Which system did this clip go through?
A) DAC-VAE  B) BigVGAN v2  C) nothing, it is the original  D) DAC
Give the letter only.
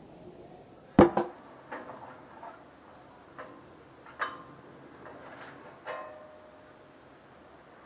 C